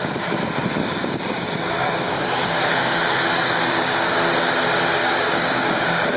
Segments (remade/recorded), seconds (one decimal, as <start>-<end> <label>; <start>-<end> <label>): 0.0-0.8 recorded; 0.8-4.5 remade; 4.5-5.0 recorded; 5.0-6.2 remade